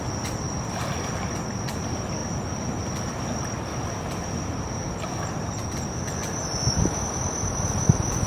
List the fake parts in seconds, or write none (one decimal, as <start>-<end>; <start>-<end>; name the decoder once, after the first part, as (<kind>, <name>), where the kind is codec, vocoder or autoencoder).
none